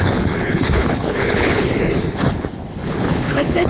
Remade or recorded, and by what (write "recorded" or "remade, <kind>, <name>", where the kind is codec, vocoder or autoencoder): remade, codec, HILCodec